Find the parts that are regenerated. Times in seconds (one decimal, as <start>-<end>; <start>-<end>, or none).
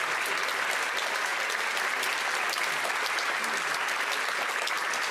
none